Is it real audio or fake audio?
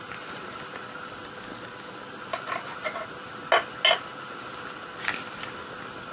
real